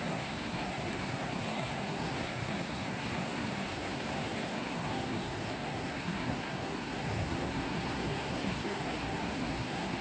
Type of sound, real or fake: fake